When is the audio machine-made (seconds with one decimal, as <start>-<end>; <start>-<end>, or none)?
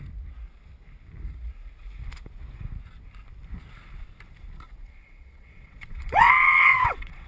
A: 4.8-7.3